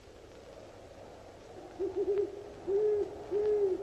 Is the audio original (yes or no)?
yes